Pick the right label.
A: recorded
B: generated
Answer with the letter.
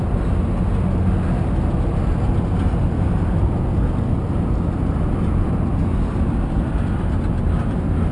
A